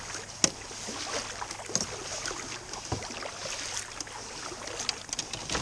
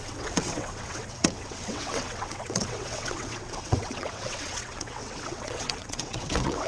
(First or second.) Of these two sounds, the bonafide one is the first